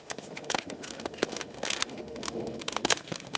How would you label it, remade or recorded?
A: remade